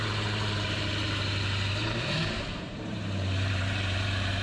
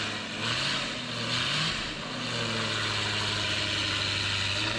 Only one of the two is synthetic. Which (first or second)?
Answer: first